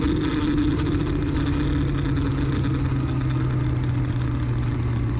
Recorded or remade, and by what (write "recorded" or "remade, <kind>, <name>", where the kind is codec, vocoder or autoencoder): recorded